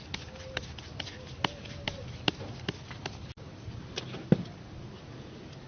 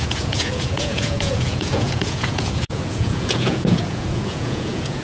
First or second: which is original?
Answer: first